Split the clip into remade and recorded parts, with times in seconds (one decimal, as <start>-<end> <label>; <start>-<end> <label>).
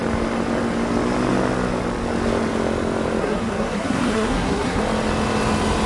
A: 0.0-3.2 recorded; 3.2-4.8 remade; 4.8-5.9 recorded